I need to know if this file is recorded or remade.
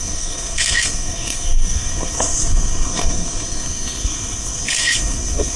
remade